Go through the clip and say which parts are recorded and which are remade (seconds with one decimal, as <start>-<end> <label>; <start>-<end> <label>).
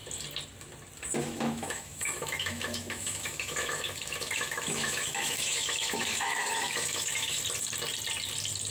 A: 0.0-1.2 recorded; 1.2-7.4 remade; 7.4-8.7 recorded